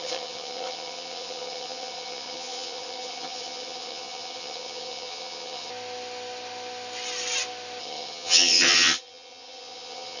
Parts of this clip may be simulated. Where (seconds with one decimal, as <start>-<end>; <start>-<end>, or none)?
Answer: 0.0-5.7; 7.8-10.2